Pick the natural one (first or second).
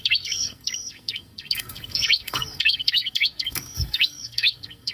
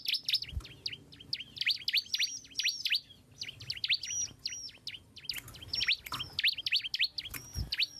second